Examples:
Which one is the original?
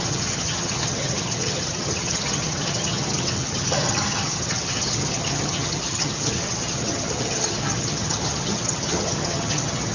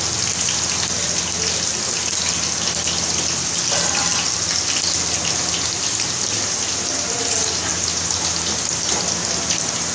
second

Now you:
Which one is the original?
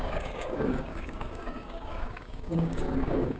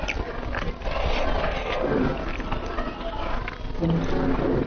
second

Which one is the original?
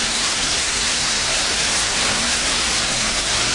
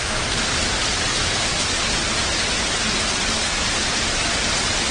second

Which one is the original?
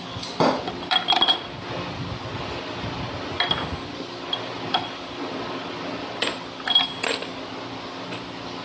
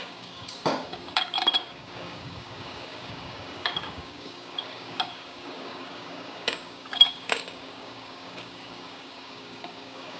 first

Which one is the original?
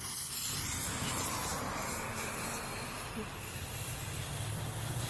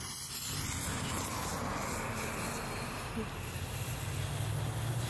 second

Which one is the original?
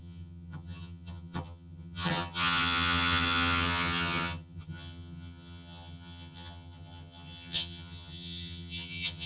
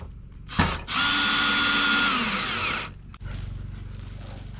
second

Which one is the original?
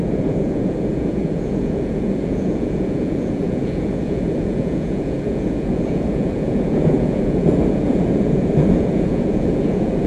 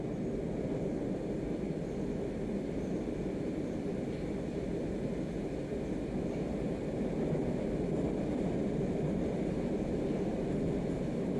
second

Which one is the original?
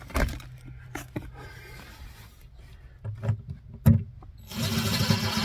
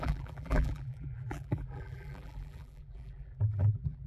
first